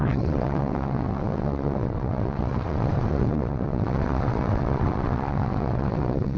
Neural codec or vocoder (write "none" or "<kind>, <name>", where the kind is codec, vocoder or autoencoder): vocoder, WaveNeXt